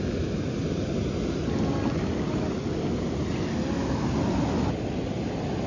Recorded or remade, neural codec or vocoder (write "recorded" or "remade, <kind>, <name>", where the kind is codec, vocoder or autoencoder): recorded